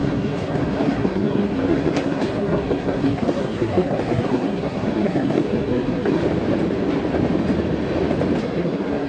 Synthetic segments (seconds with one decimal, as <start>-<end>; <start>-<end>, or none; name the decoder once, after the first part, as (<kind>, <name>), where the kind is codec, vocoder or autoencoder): 0.0-6.2 (codec, SNAC); 8.4-9.1